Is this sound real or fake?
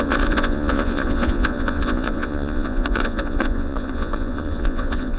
fake